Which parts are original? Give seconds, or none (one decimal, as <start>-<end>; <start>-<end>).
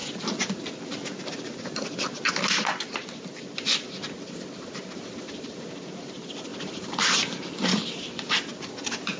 0.0-9.2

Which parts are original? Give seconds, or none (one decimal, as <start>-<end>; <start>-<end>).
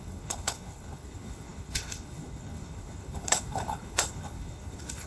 none